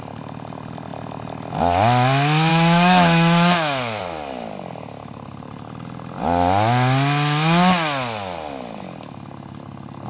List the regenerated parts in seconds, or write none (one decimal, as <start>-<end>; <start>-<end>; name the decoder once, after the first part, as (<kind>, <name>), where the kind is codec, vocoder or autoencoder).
2.5-4.0 (autoencoder, DAC-VAE)